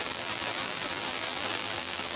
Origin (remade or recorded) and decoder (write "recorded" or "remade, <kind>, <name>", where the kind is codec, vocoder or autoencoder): remade, vocoder, BigVGAN v2